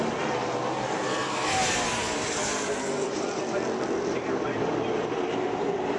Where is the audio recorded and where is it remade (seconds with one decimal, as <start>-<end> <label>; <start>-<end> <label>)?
0.0-2.0 recorded; 2.0-5.6 remade; 5.6-6.0 recorded